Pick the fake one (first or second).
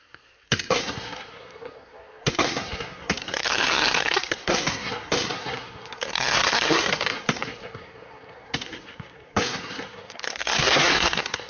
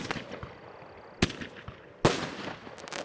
first